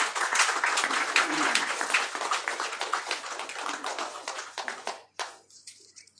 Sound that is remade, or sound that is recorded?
remade